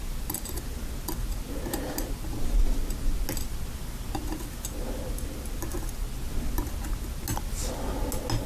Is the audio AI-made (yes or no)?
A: no